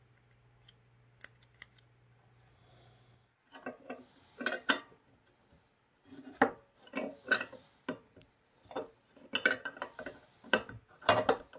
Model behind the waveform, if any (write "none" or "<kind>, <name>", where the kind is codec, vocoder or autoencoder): none